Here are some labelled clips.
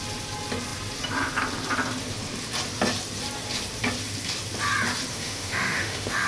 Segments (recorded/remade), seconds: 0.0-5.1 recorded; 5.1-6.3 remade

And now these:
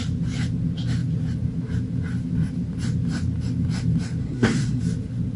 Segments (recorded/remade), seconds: 0.0-4.2 recorded; 4.2-4.8 remade; 4.8-5.4 recorded

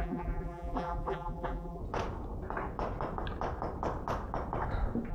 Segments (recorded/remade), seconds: 0.0-1.8 remade; 1.8-5.1 recorded